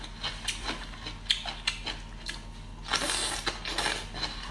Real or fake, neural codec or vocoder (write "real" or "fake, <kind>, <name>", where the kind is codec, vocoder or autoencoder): real